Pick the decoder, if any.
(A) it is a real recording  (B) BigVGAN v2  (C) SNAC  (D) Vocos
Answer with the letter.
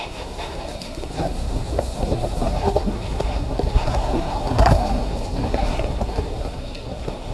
C